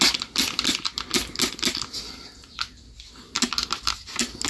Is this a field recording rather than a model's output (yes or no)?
yes